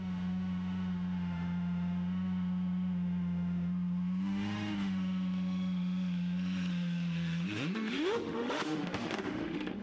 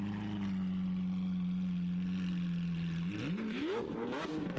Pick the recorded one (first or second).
second